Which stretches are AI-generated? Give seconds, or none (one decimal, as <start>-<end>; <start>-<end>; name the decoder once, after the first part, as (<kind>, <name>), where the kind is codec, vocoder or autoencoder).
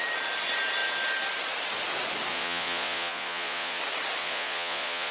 2.3-3.8 (vocoder, Vocos); 4.2-5.1